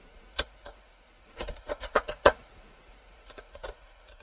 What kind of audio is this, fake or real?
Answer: fake